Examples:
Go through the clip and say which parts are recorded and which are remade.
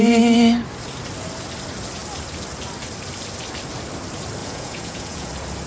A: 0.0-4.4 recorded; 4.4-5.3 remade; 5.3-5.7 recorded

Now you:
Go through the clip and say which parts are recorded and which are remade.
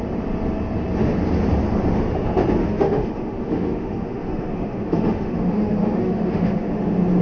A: 0.0-2.6 recorded; 2.6-6.8 remade; 6.8-7.2 recorded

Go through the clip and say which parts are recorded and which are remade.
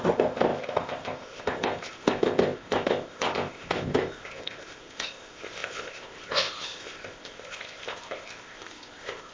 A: 0.0-9.3 remade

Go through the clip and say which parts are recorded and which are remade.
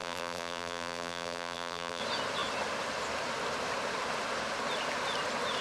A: 0.0-2.0 remade; 2.0-5.6 recorded